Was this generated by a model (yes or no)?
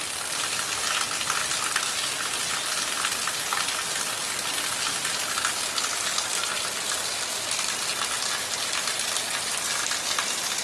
no